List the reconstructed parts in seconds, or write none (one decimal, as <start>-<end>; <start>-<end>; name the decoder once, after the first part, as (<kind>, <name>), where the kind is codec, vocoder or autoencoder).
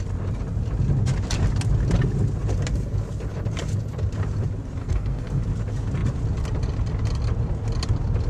4.8-5.4 (codec, SNAC)